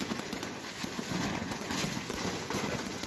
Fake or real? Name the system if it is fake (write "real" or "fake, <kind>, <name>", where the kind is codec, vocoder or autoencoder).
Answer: fake, vocoder, Vocos